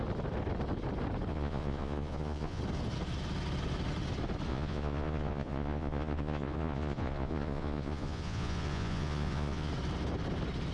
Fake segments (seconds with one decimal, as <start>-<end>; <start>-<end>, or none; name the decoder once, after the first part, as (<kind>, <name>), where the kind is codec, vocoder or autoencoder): 1.3-2.6 (vocoder, Vocos); 4.5-9.7